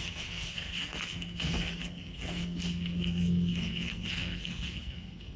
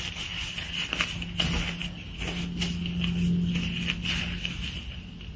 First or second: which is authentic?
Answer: second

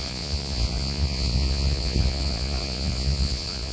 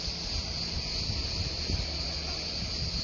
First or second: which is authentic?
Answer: second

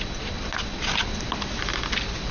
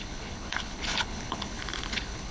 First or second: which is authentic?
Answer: first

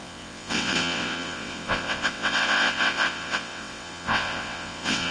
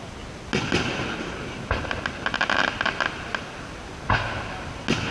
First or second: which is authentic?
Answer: second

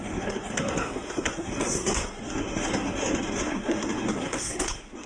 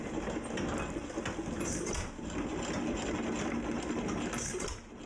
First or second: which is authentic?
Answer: second